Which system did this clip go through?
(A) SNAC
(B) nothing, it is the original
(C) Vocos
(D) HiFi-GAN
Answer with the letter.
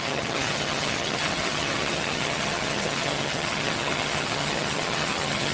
D